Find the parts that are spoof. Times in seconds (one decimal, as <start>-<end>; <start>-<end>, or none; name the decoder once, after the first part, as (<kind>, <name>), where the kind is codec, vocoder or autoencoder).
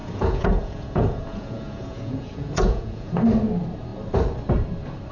0.0-3.1 (vocoder, Vocos)